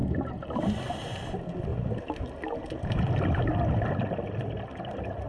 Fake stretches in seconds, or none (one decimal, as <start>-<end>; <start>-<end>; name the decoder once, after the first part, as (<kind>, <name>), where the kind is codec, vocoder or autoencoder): none